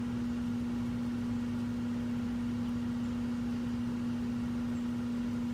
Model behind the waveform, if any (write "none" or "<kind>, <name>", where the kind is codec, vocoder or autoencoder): none